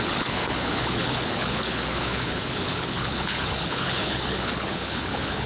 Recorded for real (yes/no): no